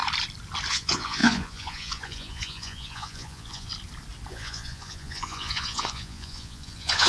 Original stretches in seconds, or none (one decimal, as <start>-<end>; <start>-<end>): 0.0-0.7; 3.7-4.3